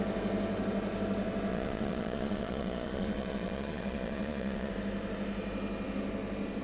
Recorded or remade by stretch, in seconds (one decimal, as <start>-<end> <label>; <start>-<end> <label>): 0.0-1.5 recorded; 1.5-4.7 remade; 4.7-6.6 recorded